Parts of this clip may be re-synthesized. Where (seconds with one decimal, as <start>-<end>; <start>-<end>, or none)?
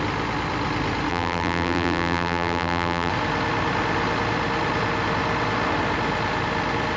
1.1-3.1